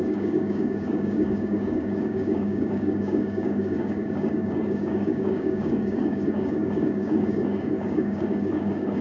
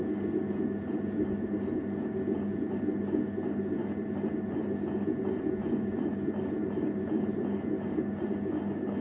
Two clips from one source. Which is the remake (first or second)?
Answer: first